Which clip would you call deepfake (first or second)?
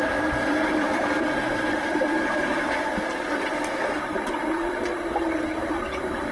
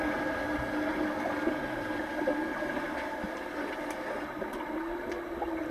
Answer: first